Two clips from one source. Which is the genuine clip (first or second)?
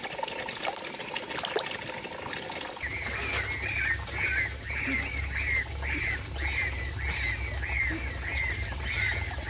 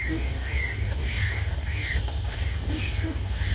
first